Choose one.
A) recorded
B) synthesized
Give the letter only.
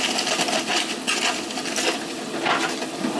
A